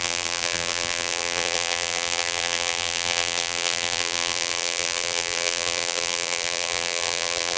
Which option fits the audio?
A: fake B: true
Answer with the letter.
A